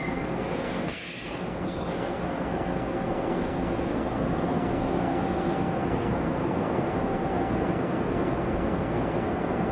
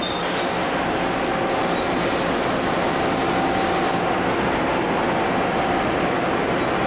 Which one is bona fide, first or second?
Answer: second